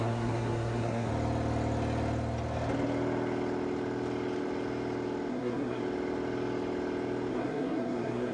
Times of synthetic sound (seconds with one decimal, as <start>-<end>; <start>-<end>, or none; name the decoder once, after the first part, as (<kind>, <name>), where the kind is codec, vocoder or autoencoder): 0.0-1.1 (codec, SNAC); 5.3-5.8; 7.3-8.3